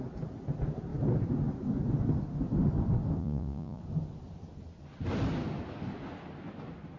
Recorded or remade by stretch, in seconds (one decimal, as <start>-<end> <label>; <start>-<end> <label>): 0.0-3.2 recorded; 3.2-3.8 remade; 3.8-7.0 recorded